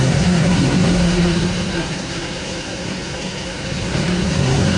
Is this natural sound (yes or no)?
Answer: no